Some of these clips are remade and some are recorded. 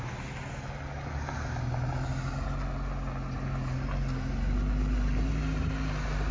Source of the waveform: recorded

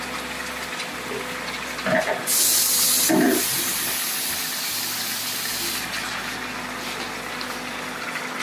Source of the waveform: recorded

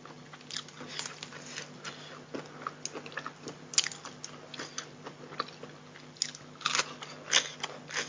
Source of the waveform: recorded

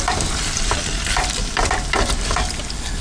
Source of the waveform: recorded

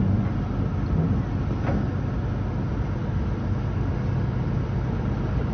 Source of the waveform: recorded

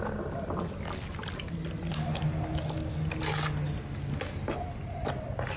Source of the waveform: recorded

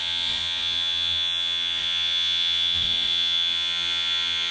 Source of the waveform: remade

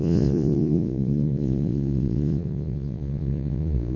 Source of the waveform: remade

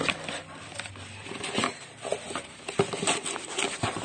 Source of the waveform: recorded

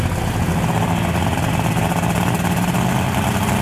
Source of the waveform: recorded